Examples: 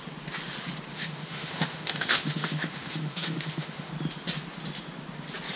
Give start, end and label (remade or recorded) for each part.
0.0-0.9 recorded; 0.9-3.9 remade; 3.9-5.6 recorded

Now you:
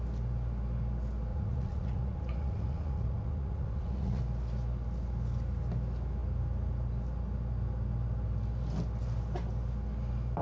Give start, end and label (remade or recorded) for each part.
0.0-1.3 recorded; 1.3-4.2 remade; 4.2-10.4 recorded

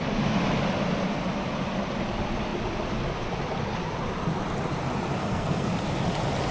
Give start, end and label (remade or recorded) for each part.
0.0-5.2 recorded; 5.2-5.7 remade; 5.7-6.5 recorded

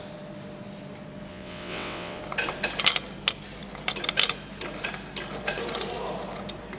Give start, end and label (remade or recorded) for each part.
0.0-1.3 recorded; 1.3-2.2 remade; 2.2-6.8 recorded

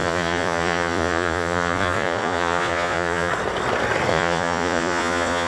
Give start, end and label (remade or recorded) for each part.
0.0-3.3 remade; 3.3-4.1 recorded; 4.1-5.5 remade

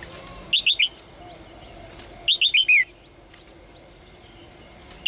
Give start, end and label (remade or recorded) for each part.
0.0-5.1 recorded

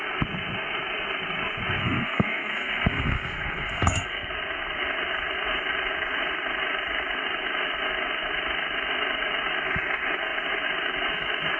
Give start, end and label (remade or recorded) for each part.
0.0-1.8 recorded; 1.8-4.3 remade; 4.3-11.6 recorded